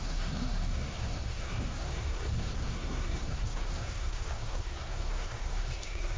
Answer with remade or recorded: remade